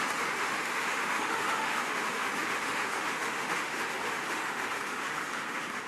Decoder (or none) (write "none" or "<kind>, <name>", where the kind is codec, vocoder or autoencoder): autoencoder, DAC-VAE